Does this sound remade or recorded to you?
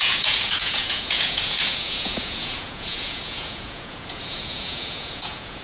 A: remade